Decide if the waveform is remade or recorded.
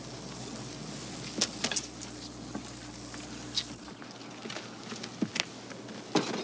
recorded